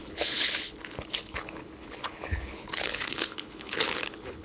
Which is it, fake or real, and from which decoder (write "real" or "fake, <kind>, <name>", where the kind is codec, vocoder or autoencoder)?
fake, codec, HILCodec